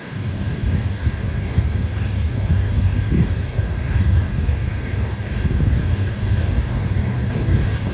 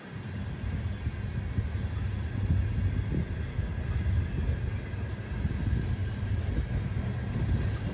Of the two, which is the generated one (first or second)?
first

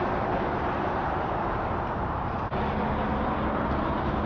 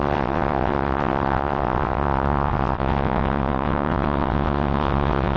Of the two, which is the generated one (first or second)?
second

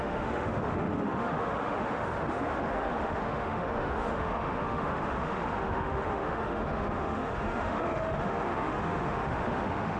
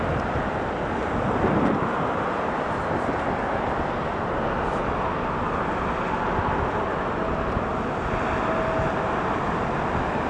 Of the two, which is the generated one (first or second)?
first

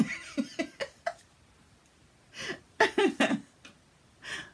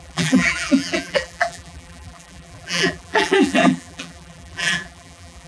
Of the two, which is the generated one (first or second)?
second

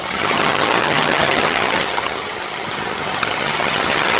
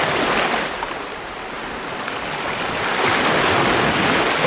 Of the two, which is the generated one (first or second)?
first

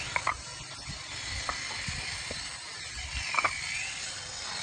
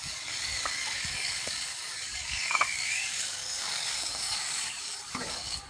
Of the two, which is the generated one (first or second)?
second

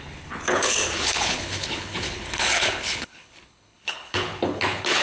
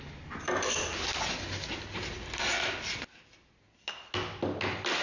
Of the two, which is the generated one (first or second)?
first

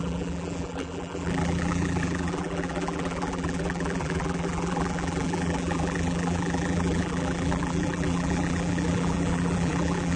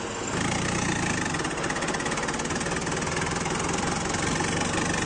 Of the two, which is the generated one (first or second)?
first